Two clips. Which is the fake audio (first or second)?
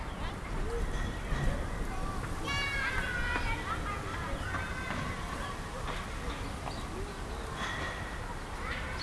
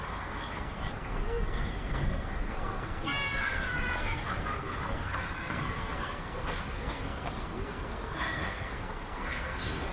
second